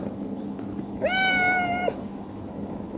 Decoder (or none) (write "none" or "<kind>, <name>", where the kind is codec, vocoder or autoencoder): autoencoder, DAC-VAE